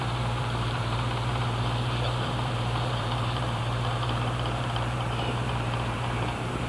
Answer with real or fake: fake